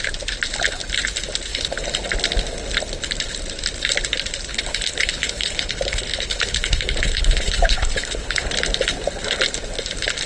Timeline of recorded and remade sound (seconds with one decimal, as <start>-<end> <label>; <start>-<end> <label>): 0.0-1.5 recorded; 1.5-2.0 remade; 2.0-4.5 recorded; 4.5-8.5 remade; 8.5-10.3 recorded